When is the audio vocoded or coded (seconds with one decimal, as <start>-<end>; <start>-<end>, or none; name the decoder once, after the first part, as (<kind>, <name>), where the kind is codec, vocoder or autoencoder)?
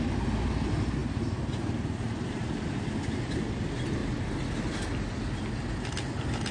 none